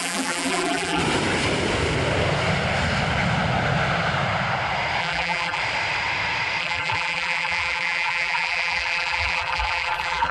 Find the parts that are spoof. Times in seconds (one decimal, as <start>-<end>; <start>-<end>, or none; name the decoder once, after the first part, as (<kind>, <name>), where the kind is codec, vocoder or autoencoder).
0.0-1.0 (vocoder, BigVGAN v2); 5.0-5.6; 6.6-10.3